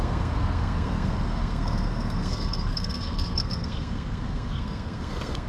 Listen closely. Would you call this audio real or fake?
fake